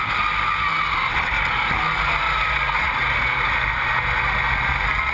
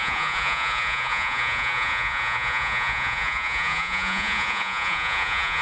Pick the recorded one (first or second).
first